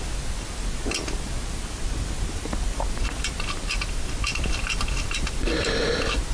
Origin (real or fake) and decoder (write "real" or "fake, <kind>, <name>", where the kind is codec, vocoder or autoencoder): real